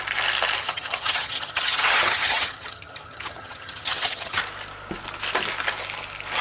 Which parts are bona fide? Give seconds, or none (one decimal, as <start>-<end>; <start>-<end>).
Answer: 0.0-0.6; 4.4-6.4